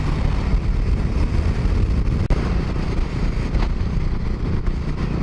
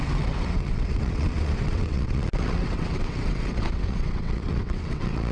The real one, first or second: first